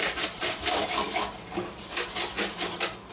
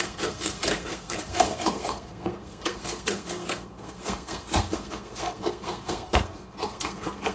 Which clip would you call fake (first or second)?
second